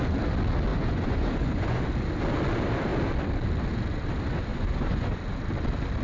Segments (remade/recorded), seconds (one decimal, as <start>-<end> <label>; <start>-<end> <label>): 0.0-0.7 recorded; 0.7-1.8 remade; 1.8-4.5 recorded; 4.5-5.2 remade; 5.2-6.0 recorded